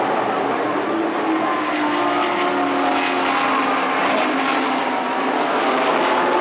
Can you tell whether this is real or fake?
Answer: real